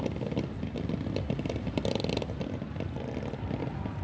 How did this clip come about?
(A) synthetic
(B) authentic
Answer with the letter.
B